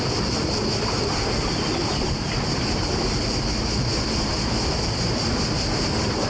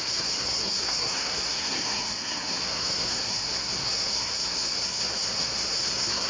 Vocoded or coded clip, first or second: second